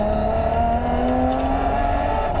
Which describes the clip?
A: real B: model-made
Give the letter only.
A